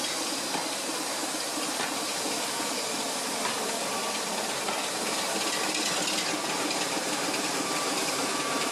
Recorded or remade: recorded